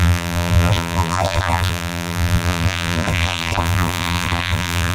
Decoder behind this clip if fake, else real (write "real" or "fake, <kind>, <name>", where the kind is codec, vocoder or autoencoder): fake, vocoder, BigVGAN v2